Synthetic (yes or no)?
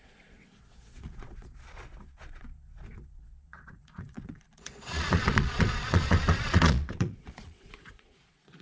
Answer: yes